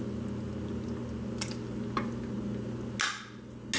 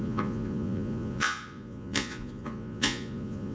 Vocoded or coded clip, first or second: second